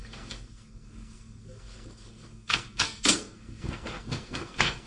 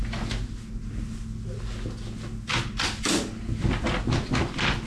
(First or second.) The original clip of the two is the second